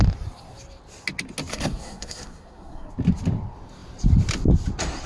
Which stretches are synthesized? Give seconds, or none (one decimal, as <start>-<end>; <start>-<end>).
1.5-2.9